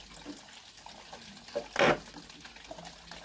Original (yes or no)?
yes